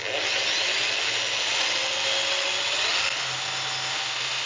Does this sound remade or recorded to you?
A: recorded